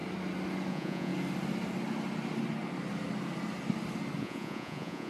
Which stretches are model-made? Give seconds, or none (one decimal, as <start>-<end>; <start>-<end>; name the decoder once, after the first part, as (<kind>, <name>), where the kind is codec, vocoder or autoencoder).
0.7-1.1 (vocoder, Vocos); 4.2-5.1